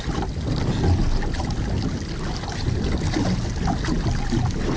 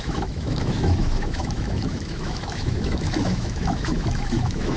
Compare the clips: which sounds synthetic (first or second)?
second